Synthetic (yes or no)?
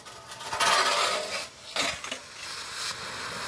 no